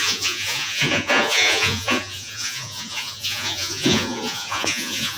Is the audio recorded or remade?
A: remade